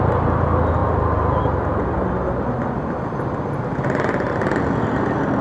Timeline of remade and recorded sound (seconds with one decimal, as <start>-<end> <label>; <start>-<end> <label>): 0.0-5.4 recorded